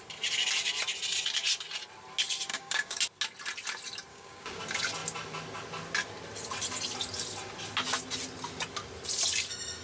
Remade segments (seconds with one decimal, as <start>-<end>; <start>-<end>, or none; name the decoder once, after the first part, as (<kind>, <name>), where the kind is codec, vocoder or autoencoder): 2.5-3.0 (codec, DAC); 4.1-4.6